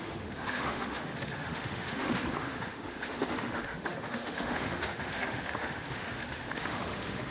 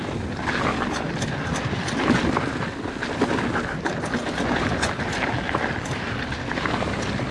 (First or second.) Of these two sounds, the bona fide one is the second